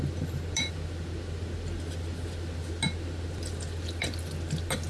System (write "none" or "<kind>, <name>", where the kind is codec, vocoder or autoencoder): none